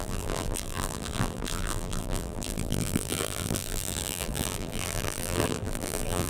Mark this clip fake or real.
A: fake